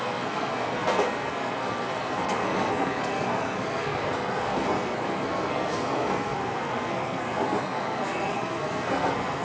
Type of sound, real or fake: fake